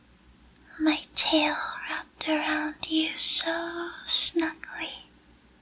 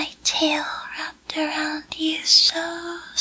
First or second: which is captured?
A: first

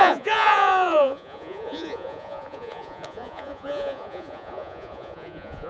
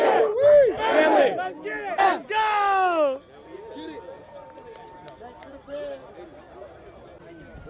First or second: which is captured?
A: second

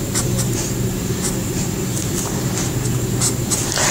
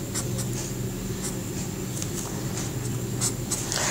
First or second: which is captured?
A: second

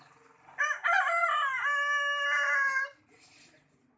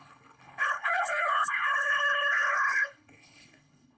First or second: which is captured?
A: first